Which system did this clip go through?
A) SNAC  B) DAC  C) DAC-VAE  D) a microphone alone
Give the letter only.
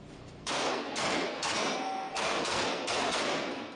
A